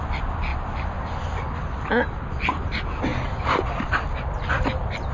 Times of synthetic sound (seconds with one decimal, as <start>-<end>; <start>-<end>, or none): none